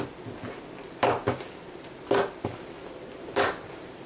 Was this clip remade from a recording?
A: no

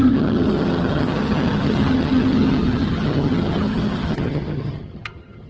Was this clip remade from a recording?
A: yes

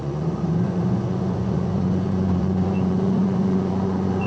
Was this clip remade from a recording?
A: yes